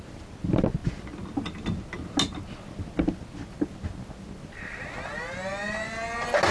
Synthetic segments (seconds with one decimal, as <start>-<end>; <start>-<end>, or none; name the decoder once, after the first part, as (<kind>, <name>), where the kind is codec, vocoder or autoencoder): none